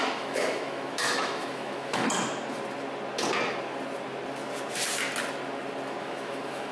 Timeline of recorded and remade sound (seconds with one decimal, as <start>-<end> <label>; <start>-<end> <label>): 0.0-2.0 remade; 2.0-6.0 recorded; 6.0-6.7 remade